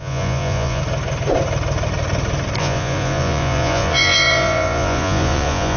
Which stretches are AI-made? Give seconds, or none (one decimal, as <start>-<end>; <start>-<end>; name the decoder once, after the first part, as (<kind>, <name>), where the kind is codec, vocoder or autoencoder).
0.0-0.8 (vocoder, Vocos); 2.6-5.8